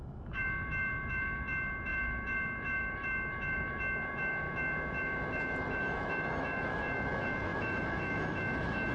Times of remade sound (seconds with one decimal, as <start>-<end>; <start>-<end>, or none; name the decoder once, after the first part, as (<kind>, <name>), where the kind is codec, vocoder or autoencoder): 0.0-8.9 (autoencoder, DAC-VAE)